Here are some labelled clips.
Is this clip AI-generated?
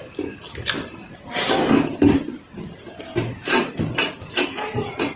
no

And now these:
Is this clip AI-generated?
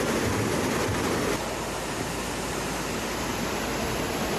no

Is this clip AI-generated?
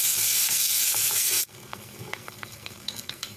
yes